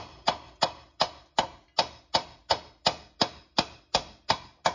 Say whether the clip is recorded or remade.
recorded